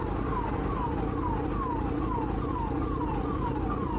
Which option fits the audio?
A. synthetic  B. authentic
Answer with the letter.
B